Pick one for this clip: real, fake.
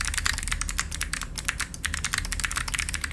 fake